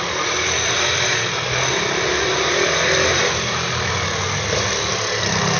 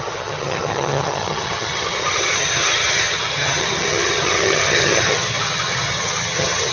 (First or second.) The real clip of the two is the first